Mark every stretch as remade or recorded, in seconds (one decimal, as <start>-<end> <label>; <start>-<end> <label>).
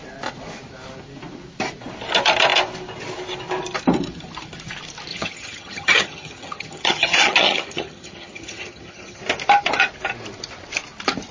0.0-5.1 recorded; 5.1-9.2 remade; 9.2-11.3 recorded